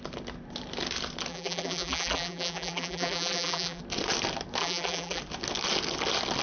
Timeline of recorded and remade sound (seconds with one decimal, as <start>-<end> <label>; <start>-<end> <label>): 0.0-1.3 recorded; 1.3-3.8 remade; 3.8-4.6 recorded; 4.6-5.2 remade; 5.2-6.4 recorded